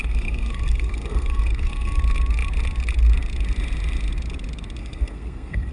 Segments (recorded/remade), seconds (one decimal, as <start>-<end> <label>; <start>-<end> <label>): 0.0-2.0 remade; 2.0-4.8 recorded; 4.8-5.7 remade